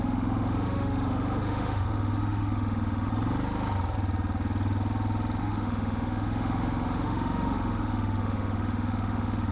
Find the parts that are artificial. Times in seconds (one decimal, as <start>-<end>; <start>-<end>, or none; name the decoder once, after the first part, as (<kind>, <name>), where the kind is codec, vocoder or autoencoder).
0.0-3.1 (autoencoder, DAC-VAE); 5.4-9.5